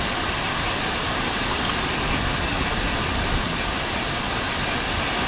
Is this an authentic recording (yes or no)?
yes